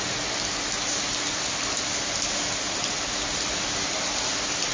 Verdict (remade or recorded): recorded